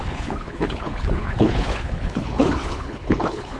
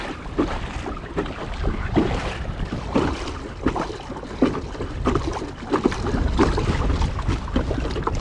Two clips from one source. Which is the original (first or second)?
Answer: second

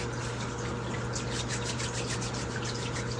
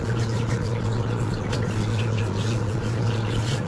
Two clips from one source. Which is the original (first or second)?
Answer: first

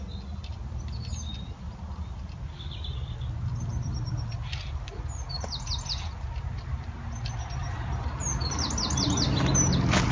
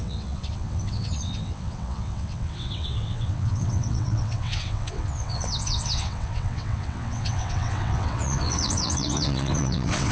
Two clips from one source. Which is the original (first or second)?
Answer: first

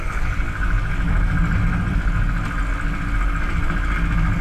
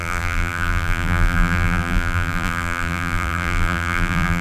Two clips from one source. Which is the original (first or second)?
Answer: first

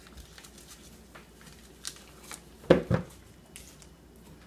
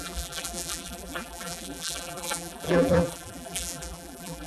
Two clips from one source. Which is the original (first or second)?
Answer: first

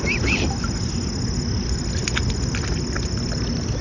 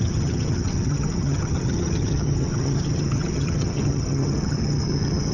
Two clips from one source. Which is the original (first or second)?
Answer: first